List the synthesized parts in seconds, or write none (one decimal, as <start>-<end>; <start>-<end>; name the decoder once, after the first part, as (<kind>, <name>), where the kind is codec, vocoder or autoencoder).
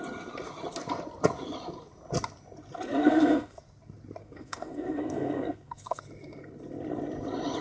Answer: 3.0-3.6 (codec, SNAC); 4.2-6.0